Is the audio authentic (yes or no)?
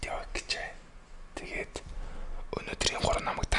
yes